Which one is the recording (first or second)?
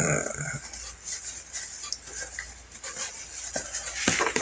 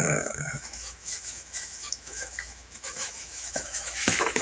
first